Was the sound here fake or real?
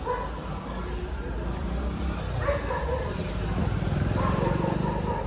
real